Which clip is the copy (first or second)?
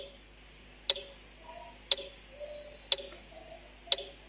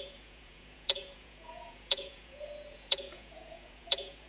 second